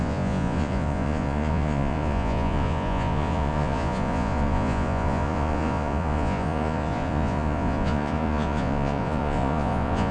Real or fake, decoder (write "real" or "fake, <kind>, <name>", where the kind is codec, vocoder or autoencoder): fake, vocoder, Vocos